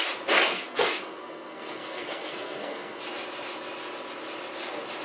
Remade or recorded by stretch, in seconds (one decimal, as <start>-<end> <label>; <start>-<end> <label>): 0.0-0.5 recorded; 0.5-3.0 remade; 3.0-5.0 recorded